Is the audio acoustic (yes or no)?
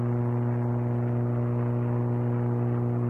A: yes